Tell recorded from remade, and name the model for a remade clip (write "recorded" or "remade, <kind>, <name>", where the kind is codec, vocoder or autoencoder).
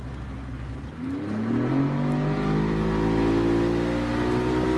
recorded